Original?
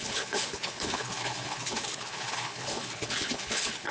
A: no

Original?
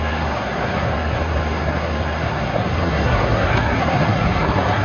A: no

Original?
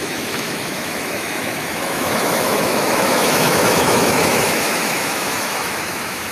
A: no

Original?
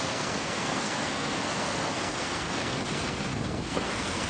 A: no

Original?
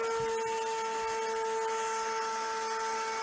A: yes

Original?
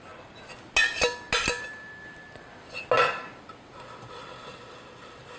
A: yes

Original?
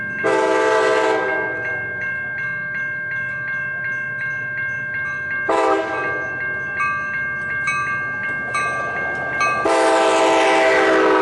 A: yes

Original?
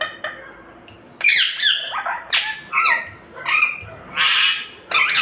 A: yes